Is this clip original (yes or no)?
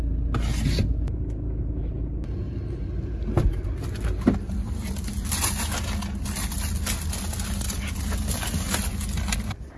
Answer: yes